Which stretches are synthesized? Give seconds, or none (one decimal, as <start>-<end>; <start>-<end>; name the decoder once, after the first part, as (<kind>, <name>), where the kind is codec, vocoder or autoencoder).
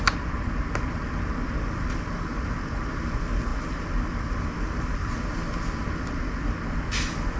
none